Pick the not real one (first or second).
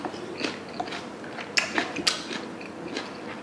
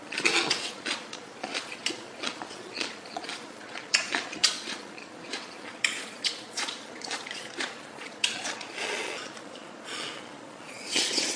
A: second